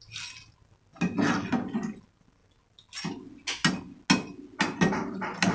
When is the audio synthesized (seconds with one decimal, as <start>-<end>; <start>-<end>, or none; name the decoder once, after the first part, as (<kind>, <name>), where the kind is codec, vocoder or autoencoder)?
none